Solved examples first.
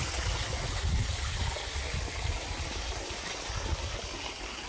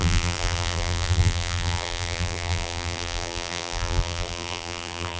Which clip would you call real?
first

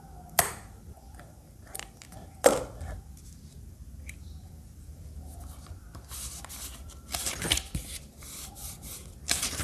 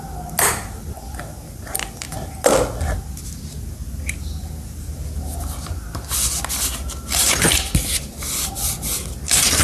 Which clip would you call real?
second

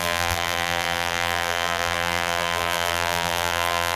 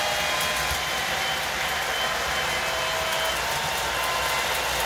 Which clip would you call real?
second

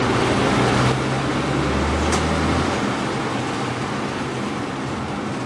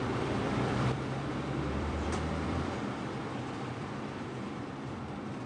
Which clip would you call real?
first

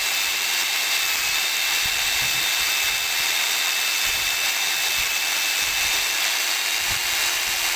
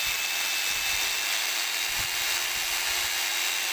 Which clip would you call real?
second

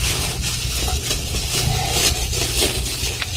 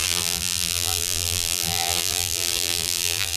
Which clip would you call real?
first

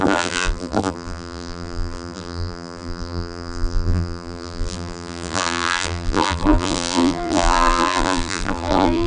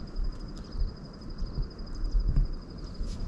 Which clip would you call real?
second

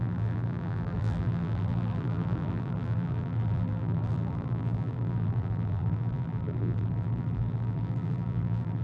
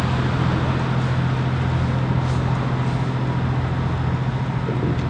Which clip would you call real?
second